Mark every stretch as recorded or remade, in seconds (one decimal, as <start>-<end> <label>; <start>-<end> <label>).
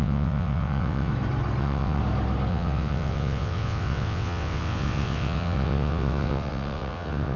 0.0-1.1 remade; 1.1-1.6 recorded; 1.6-2.0 remade; 2.0-2.5 recorded; 2.5-7.4 remade